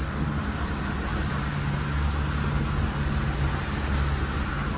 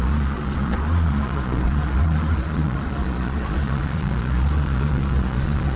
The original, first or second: first